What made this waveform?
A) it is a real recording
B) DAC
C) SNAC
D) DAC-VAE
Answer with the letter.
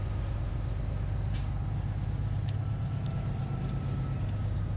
A